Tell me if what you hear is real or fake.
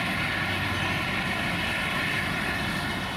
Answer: real